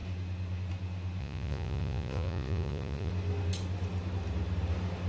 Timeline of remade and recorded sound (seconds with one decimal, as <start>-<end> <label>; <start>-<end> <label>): 0.0-1.2 recorded; 1.2-3.1 remade; 3.1-5.1 recorded